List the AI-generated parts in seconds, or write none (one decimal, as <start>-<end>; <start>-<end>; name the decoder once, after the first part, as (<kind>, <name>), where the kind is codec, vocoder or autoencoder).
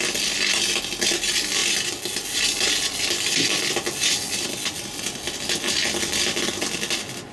none